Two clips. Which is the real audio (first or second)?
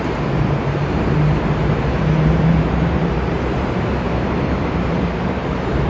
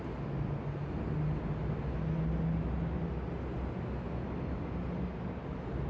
second